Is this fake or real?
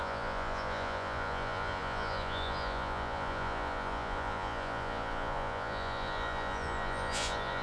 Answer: fake